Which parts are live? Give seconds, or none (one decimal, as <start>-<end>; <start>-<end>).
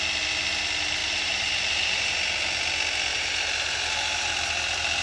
0.0-1.0; 2.1-3.1; 4.3-5.0